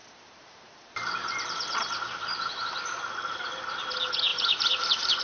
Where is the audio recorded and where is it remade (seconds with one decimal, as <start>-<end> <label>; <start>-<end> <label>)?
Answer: 0.0-3.0 remade; 3.0-4.3 recorded; 4.3-5.2 remade